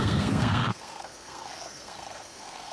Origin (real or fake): fake